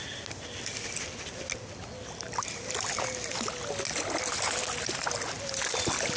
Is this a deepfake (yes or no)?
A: no